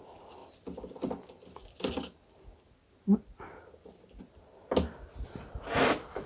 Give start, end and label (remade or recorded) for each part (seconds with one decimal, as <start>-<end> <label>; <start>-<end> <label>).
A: 0.0-6.3 recorded